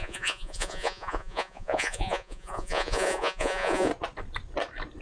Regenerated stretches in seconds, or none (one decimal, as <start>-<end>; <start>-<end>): 0.0-3.9